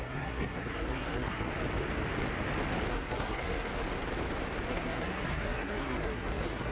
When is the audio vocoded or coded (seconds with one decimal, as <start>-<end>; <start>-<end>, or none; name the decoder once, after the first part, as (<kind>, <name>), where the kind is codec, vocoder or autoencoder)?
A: 0.0-1.5 (codec, SNAC); 2.9-3.7; 4.7-6.7